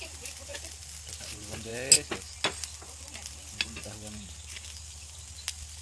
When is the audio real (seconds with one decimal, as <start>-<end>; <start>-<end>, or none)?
0.0-5.8